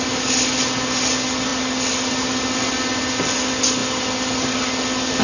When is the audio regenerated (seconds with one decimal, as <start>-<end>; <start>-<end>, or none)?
none